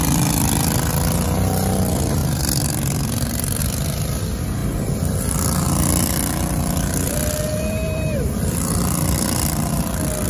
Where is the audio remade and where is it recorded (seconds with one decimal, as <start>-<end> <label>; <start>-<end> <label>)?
0.0-2.2 recorded; 2.2-3.6 remade; 3.6-4.6 recorded; 4.6-9.8 remade; 9.8-10.3 recorded